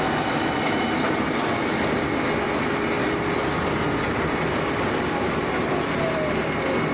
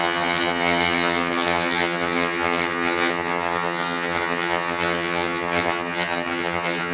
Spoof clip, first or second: second